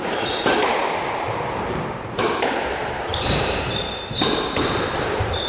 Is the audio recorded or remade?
remade